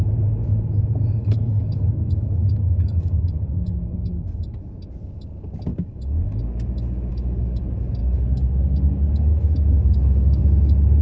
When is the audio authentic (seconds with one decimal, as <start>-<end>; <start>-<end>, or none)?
0.0-1.2; 4.4-5.7; 6.4-7.1; 7.6-8.0; 10.4-11.0